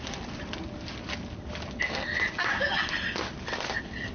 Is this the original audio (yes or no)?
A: yes